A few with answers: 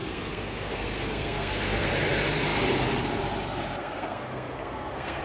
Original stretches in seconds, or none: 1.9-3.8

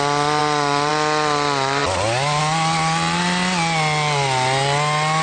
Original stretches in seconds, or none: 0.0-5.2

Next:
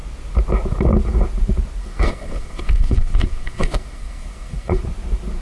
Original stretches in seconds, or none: 0.0-1.8; 4.8-5.4

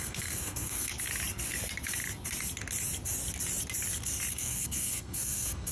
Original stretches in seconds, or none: 0.9-4.3

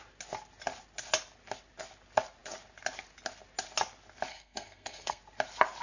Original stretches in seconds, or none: 0.0-4.3; 5.2-5.8